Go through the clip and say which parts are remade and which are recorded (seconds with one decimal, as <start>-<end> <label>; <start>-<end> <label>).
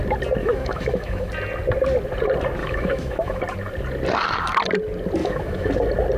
0.0-0.4 recorded; 0.4-1.3 remade; 1.3-2.6 recorded; 2.6-3.4 remade; 3.4-5.2 recorded; 5.2-5.7 remade; 5.7-6.2 recorded